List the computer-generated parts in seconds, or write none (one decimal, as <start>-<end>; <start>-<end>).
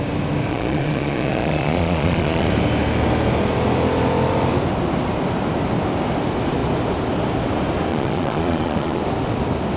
0.5-2.5; 7.9-9.0